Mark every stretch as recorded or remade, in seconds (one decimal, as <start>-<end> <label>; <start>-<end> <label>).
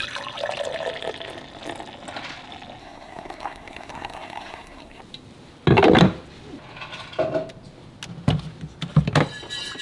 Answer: 0.0-2.8 recorded; 2.8-5.0 remade; 5.0-9.8 recorded